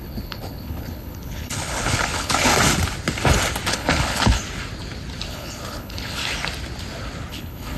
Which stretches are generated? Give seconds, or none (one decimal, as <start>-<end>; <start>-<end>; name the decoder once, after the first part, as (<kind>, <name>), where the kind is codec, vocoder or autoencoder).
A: 0.0-2.5 (codec, HILCodec); 3.7-4.4; 5.3-6.2; 7.3-7.8